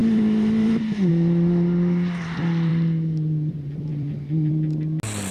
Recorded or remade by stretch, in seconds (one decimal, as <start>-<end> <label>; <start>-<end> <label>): 0.0-1.1 remade; 1.1-3.9 recorded; 3.9-4.5 remade; 4.5-5.3 recorded